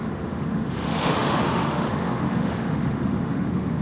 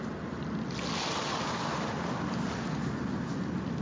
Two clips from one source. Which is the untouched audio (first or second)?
second